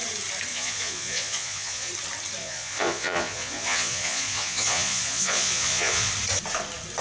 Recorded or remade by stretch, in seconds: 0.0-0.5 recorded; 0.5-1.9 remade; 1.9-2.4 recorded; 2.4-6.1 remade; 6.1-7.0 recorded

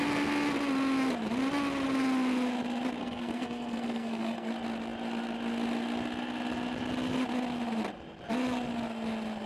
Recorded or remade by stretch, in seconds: 0.0-3.0 recorded; 3.0-4.5 remade; 4.5-9.5 recorded

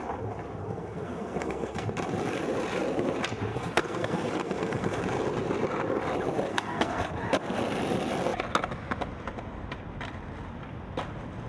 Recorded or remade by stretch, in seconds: 0.0-0.6 recorded; 0.6-1.9 remade; 1.9-3.5 recorded; 3.5-5.0 remade; 5.0-6.5 recorded; 6.5-7.1 remade; 7.1-11.5 recorded

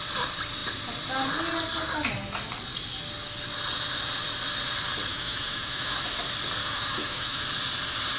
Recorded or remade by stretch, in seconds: 0.0-5.1 recorded; 5.1-6.0 remade; 6.0-6.6 recorded; 6.6-7.4 remade; 7.4-8.2 recorded

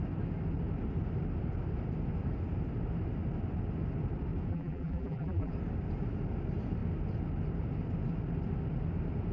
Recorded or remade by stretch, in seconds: 0.0-4.5 recorded; 4.5-5.5 remade; 5.5-9.3 recorded

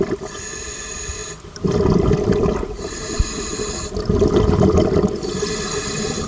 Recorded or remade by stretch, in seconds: 0.0-6.3 recorded